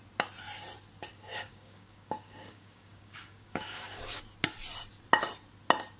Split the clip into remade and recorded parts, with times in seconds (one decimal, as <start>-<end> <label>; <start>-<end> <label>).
0.0-1.3 recorded; 1.3-4.2 remade; 4.2-6.0 recorded